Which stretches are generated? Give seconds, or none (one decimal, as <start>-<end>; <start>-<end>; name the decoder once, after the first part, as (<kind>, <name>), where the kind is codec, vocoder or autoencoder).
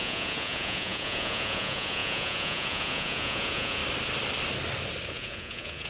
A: 0.0-3.8 (vocoder, Vocos); 5.1-5.9